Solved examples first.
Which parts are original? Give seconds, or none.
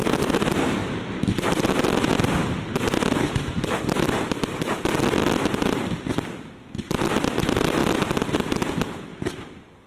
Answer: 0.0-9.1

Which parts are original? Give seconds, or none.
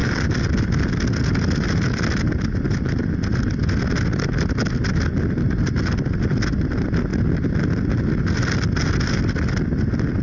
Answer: 0.0-10.2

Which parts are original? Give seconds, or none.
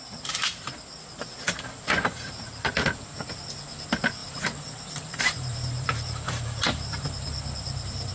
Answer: 0.0-4.2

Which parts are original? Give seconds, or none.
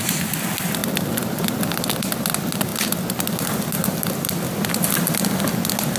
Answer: 0.0-6.0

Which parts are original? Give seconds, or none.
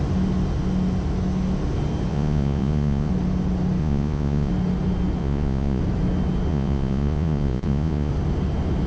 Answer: 0.0-2.1; 3.1-3.8; 4.5-5.2; 5.8-6.5; 8.1-8.9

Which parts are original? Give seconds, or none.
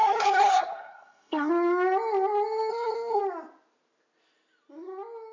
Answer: 1.5-2.7; 3.2-5.3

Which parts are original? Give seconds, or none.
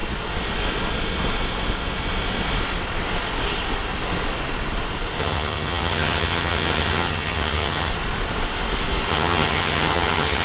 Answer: 0.0-5.2; 7.9-9.1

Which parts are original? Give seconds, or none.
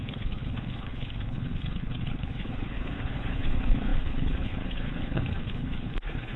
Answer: none